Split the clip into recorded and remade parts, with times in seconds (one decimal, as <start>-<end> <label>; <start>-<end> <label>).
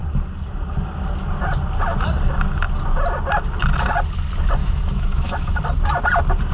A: 0.0-4.6 recorded; 4.6-5.6 remade; 5.6-6.5 recorded